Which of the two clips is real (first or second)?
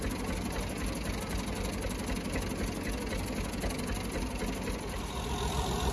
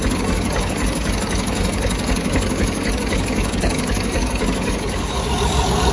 first